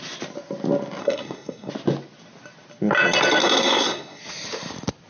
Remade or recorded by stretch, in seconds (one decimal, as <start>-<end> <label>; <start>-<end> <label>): 0.0-1.0 recorded; 1.0-1.7 remade; 1.7-3.4 recorded; 3.4-4.2 remade; 4.2-5.1 recorded